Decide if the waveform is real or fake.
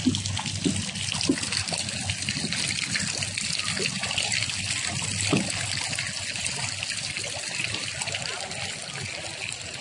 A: real